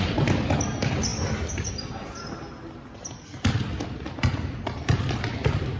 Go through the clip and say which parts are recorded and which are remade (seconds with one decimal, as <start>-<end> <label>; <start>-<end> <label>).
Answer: 0.0-5.8 recorded